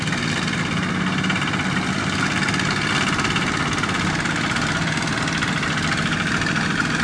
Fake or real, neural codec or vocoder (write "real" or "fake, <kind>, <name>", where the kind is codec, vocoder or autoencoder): real